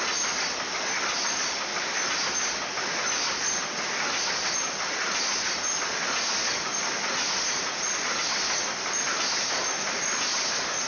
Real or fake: real